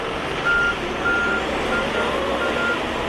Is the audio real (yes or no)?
yes